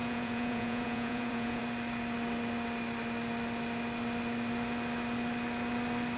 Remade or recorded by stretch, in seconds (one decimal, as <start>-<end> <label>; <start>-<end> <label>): 0.0-1.6 remade; 1.6-6.2 recorded